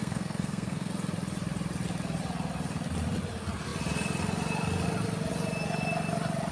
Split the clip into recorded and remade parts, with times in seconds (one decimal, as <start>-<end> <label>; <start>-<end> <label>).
0.0-0.9 remade; 0.9-6.5 recorded